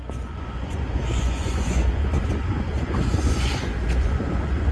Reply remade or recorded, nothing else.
remade